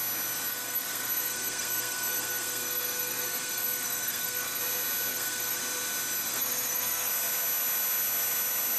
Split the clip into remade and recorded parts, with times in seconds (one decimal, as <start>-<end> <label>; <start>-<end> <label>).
0.0-0.5 recorded; 0.5-4.6 remade; 4.6-5.1 recorded; 5.1-5.6 remade; 5.6-6.3 recorded; 6.3-7.1 remade; 7.1-8.8 recorded